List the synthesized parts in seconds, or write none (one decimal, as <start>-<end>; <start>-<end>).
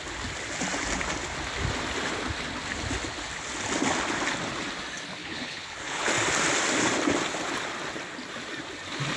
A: 5.2-6.1